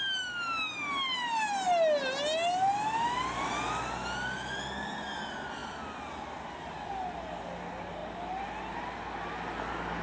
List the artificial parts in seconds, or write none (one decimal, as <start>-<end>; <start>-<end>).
none